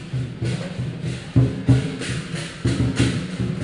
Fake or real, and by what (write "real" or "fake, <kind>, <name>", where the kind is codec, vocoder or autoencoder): fake, vocoder, BigVGAN v2